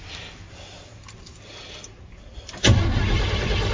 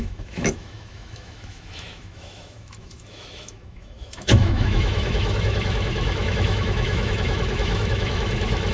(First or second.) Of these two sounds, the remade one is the second